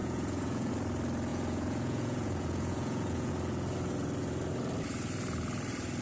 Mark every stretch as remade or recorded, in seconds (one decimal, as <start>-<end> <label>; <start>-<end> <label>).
0.0-0.7 remade; 0.7-1.3 recorded; 1.3-3.3 remade; 3.3-6.0 recorded